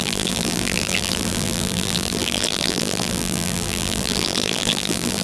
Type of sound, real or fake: fake